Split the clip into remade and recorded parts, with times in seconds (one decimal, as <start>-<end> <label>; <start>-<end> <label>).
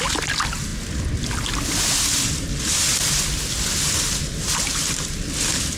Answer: 0.0-5.8 recorded